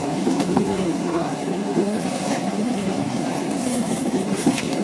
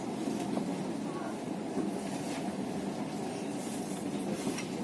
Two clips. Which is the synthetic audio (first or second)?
first